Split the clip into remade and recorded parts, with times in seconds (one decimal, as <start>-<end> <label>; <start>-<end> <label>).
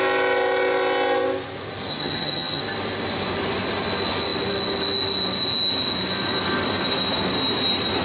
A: 0.0-1.9 recorded; 1.9-2.6 remade; 2.6-8.0 recorded